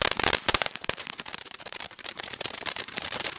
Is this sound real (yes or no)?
no